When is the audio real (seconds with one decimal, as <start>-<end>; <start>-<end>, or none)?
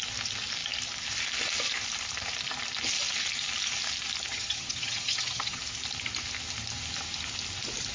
0.0-4.3; 5.6-7.9